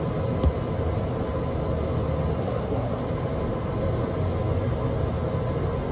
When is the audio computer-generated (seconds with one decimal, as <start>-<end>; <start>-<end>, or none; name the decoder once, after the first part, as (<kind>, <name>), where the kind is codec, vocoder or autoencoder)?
2.4-3.0 (codec, SNAC)